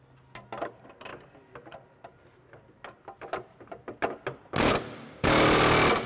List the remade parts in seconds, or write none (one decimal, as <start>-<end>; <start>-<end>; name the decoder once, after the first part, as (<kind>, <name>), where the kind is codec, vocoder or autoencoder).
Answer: none